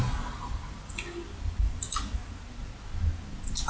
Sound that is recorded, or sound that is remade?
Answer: recorded